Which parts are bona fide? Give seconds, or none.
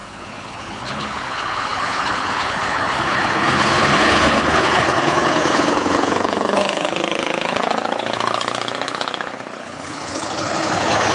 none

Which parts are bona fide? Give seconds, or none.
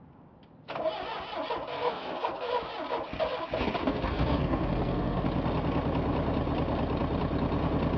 0.0-1.7; 2.5-3.8; 5.2-8.0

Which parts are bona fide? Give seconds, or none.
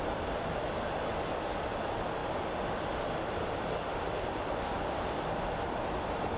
0.0-2.2; 6.0-6.4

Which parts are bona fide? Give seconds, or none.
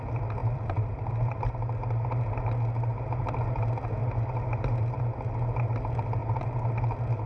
0.0-0.4; 1.5-6.2; 6.7-7.3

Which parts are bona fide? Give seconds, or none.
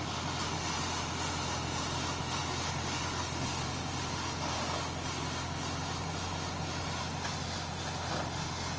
0.0-8.8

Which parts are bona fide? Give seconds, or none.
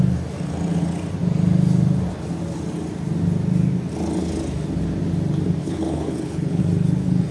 0.0-5.6; 6.6-7.3